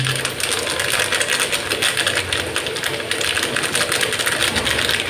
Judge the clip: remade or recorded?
recorded